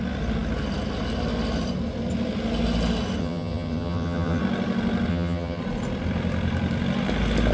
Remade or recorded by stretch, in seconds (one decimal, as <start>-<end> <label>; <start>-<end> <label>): 0.0-3.2 recorded; 3.2-4.4 remade; 4.4-5.1 recorded; 5.1-5.6 remade; 5.6-7.5 recorded